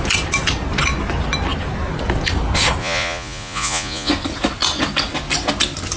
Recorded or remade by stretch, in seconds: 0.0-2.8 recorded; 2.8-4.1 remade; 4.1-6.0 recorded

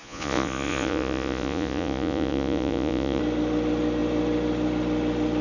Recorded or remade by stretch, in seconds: 0.0-3.2 remade; 3.2-5.4 recorded

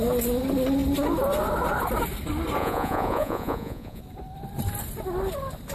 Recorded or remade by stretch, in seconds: 0.0-2.6 recorded; 2.6-4.0 remade; 4.0-5.7 recorded

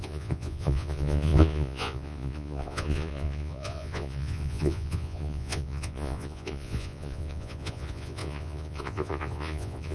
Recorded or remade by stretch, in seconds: 0.0-9.9 remade